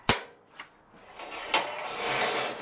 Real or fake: real